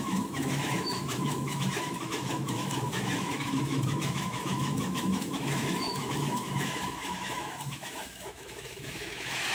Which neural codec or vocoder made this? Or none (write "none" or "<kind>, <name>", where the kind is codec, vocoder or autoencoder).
autoencoder, DAC-VAE